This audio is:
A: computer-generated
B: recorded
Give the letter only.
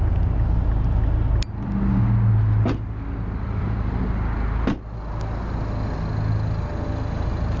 B